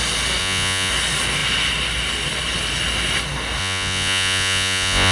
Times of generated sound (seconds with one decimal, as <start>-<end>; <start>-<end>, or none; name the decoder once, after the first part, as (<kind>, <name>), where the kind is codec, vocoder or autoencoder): 0.4-0.9 (vocoder, Vocos); 3.6-5.1